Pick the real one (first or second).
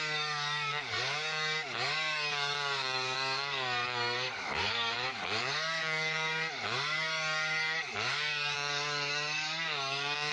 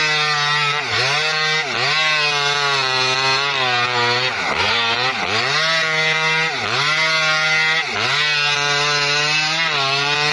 second